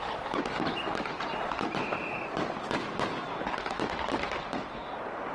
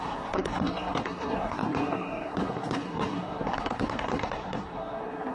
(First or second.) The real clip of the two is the first